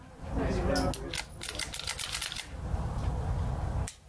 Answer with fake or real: real